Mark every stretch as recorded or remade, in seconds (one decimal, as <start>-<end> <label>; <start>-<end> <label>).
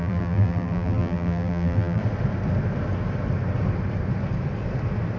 0.0-2.0 remade; 2.0-5.2 recorded